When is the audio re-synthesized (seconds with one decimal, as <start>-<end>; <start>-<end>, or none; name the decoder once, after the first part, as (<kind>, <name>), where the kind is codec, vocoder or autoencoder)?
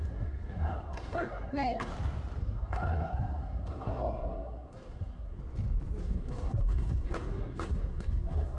0.0-1.9 (codec, SNAC); 2.4-5.4; 6.0-8.6